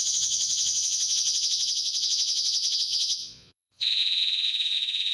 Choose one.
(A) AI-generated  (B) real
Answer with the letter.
A